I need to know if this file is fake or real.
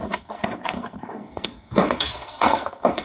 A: fake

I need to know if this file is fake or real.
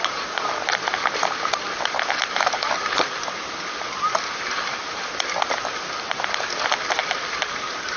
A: real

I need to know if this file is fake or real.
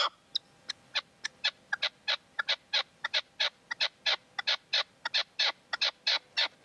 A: real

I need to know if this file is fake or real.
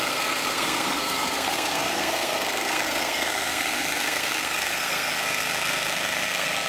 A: fake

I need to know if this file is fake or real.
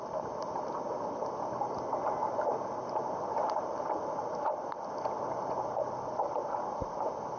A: real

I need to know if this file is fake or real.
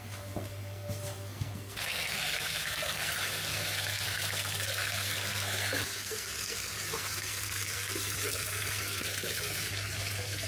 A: fake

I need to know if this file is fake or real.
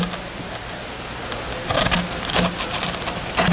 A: real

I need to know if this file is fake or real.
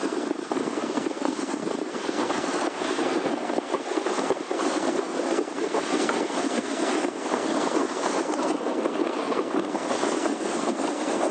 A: fake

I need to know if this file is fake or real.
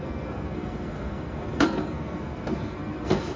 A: fake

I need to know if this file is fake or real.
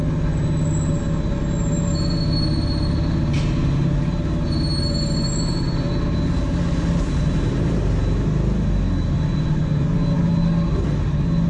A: real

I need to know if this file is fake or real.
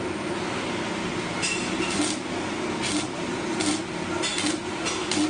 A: real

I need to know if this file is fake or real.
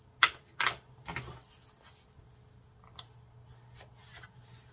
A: real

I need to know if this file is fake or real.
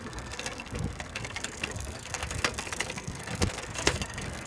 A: fake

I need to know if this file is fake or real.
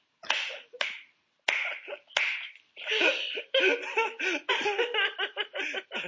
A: real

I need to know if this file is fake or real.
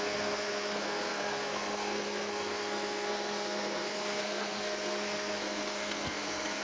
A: fake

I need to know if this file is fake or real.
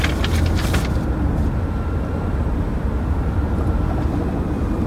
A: real